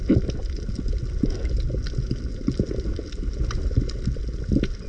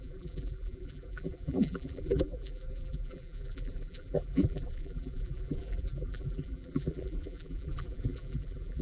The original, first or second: first